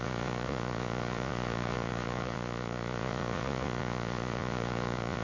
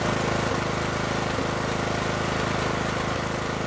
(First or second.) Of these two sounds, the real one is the second